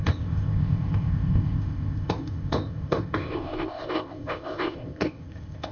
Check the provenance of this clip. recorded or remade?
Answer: remade